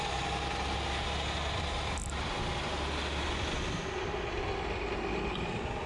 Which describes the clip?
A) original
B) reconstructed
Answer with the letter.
A